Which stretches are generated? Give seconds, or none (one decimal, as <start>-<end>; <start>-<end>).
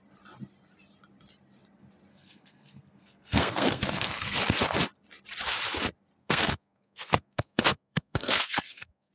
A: 2.1-4.4; 6.2-9.1